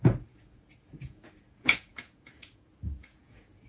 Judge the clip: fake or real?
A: fake